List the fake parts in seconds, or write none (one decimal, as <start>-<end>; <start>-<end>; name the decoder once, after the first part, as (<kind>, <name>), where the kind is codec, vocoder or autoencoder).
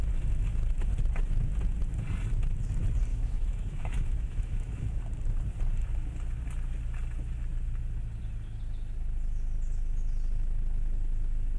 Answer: 3.1-5.0 (autoencoder, DAC-VAE)